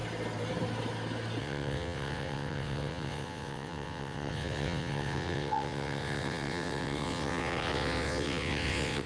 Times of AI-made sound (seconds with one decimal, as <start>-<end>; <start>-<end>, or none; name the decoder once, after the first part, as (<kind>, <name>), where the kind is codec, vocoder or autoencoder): 1.4-9.1 (vocoder, WaveNeXt)